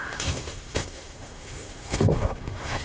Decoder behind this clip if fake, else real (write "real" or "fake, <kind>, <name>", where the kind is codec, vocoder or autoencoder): fake, codec, SNAC